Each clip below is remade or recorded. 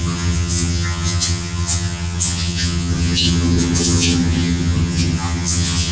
remade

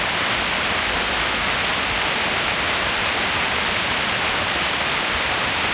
recorded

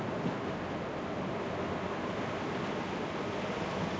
recorded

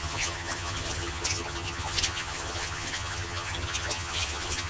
remade